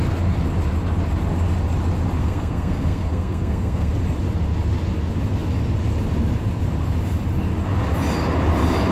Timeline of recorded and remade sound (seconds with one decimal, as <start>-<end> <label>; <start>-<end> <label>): 0.0-2.2 recorded; 2.2-3.9 remade; 3.9-8.9 recorded